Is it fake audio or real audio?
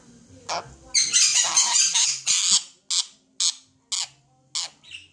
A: real